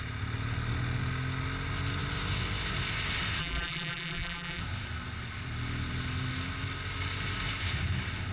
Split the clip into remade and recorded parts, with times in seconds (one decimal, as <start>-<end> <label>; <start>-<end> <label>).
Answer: 0.0-3.4 recorded; 3.4-4.6 remade; 4.6-8.3 recorded